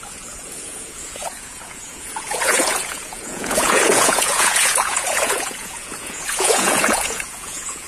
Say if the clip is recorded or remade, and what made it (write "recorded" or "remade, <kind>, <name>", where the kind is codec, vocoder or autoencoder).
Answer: remade, vocoder, Vocos